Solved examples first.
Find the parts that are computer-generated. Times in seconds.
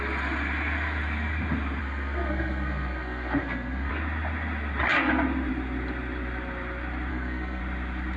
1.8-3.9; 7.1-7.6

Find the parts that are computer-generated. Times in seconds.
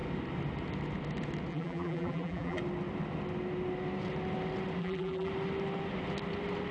1.5-2.6; 4.8-5.3